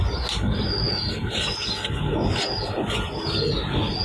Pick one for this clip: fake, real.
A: real